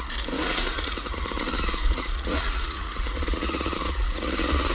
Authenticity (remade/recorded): remade